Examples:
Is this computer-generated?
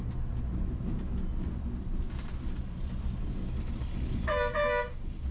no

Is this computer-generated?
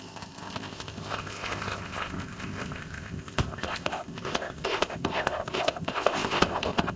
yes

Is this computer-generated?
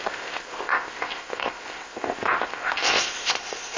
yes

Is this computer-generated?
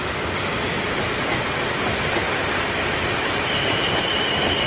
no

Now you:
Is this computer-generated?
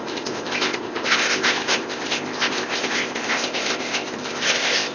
yes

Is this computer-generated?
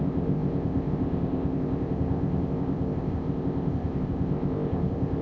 yes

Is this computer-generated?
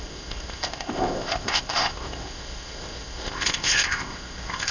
yes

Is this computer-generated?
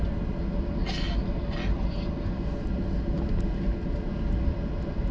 no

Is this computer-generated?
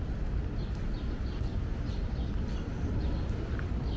no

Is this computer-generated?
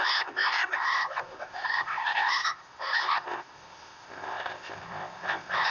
yes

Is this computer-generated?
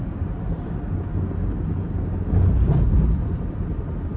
no